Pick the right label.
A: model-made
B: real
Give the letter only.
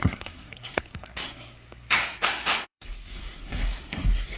A